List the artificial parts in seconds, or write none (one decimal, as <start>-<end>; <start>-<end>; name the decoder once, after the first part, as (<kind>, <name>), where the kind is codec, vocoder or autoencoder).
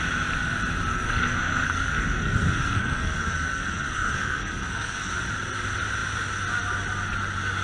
0.9-5.1 (codec, SNAC)